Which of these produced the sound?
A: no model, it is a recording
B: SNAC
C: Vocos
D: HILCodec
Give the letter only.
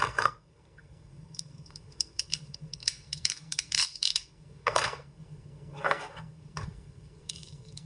B